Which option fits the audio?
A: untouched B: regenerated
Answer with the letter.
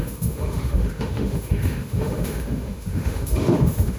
B